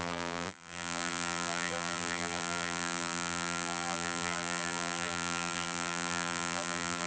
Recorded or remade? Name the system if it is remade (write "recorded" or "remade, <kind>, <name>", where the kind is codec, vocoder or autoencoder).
remade, vocoder, BigVGAN v2